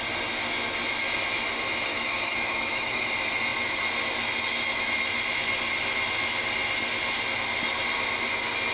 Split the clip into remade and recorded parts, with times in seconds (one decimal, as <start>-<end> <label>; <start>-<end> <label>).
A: 0.0-1.9 recorded; 1.9-3.0 remade; 3.0-8.7 recorded